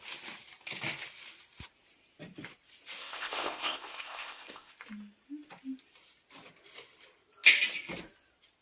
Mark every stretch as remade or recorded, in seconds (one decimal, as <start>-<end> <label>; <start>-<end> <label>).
0.0-3.0 recorded; 3.0-4.7 remade; 4.7-8.6 recorded